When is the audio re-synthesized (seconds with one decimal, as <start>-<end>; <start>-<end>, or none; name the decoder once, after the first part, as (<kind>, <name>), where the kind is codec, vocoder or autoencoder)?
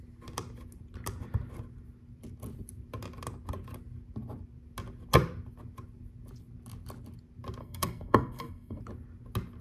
7.6-8.8 (codec, SNAC)